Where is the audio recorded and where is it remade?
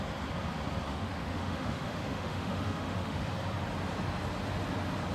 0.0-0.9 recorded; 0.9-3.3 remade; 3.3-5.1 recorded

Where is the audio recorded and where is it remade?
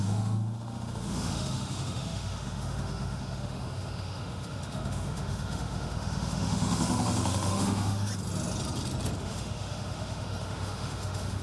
0.0-8.1 remade; 8.1-9.2 recorded; 9.2-11.4 remade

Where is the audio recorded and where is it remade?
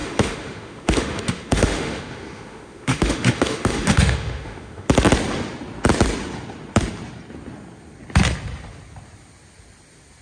0.0-4.9 remade; 4.9-10.2 recorded